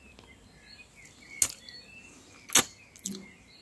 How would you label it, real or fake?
real